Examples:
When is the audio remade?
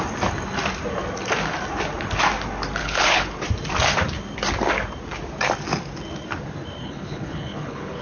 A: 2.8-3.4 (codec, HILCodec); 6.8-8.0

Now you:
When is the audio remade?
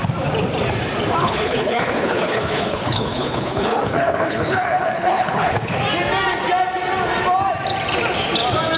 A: 1.2-5.8 (codec, HILCodec)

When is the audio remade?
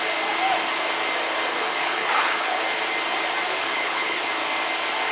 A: 1.5-2.6 (codec, HILCodec); 3.6-4.3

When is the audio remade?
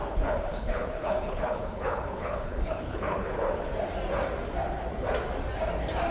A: 0.0-3.7 (codec, HILCodec)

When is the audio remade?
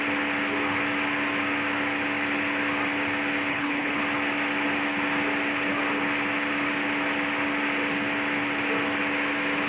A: 3.5-4.0 (codec, HILCodec)